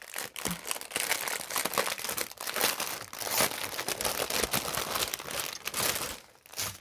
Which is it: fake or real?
real